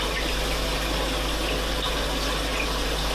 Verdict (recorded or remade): recorded